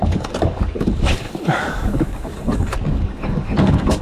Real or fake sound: fake